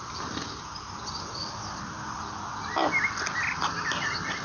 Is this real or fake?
real